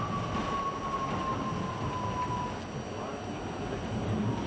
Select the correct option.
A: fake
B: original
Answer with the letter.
B